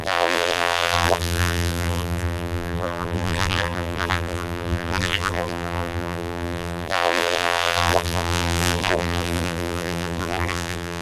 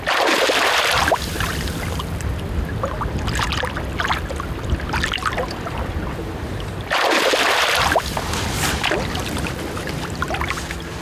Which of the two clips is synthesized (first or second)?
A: first